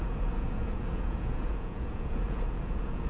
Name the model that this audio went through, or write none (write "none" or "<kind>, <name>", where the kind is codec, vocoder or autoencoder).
vocoder, Vocos